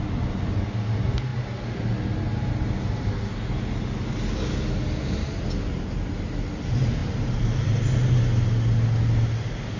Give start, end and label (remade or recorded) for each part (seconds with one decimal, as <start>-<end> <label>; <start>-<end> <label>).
0.0-7.0 recorded; 7.0-8.2 remade; 8.2-9.8 recorded